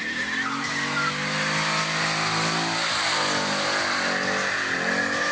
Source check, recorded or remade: recorded